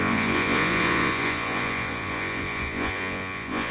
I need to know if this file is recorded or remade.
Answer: remade